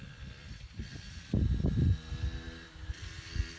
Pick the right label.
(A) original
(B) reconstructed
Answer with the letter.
A